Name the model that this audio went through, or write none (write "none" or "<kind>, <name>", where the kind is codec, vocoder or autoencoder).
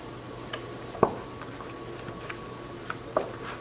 none